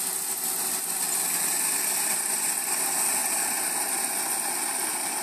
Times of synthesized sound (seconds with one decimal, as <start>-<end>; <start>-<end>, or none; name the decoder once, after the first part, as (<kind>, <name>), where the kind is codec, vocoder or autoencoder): none